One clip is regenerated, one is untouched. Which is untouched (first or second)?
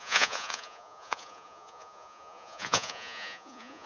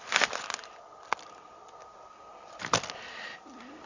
second